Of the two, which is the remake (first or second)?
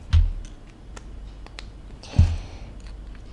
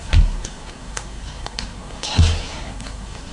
second